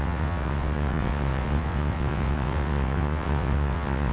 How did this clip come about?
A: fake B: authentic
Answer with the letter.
A